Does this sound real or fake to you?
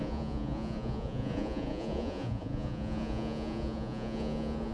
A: fake